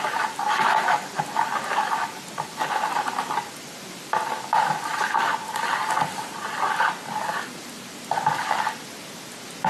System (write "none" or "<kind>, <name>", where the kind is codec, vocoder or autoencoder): none